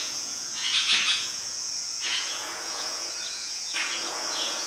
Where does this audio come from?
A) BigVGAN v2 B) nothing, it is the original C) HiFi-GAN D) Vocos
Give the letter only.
D